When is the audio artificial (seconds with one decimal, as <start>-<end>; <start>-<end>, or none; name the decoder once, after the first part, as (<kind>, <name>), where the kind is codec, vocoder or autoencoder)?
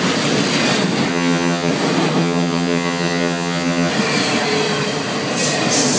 1.1-1.7 (vocoder, HiFi-GAN); 2.2-3.9